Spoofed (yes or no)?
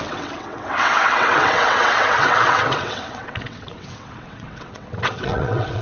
yes